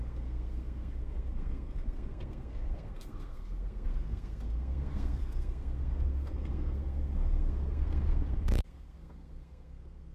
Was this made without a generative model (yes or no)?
no